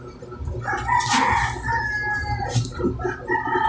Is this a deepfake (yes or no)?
no